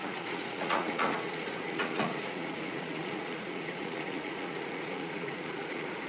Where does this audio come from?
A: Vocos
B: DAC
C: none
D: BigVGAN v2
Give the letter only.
A